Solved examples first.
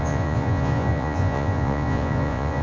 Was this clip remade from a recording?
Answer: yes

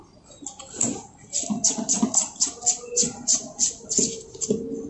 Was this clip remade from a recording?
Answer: no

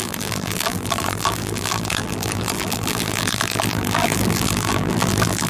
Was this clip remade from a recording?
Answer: yes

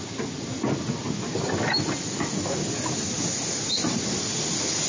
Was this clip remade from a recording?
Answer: no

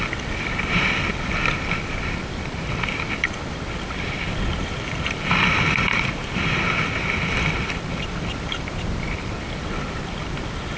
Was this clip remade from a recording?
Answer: yes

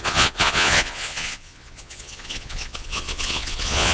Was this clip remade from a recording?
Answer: yes